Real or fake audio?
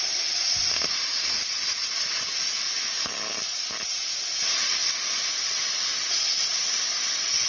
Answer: real